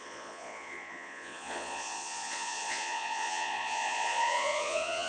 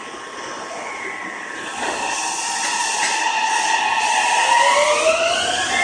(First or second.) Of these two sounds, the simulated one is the first